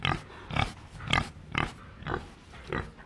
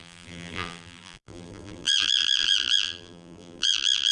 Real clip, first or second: first